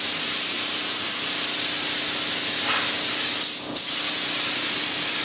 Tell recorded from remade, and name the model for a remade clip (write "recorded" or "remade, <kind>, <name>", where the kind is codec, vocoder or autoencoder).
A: recorded